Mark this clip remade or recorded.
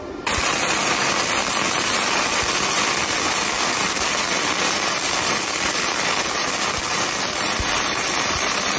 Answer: remade